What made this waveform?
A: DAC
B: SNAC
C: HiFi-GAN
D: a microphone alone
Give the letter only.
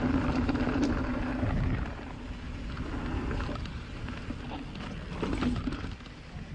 D